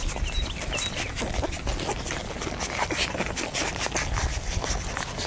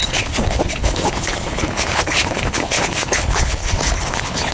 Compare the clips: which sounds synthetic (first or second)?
second